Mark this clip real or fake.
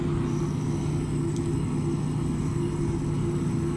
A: real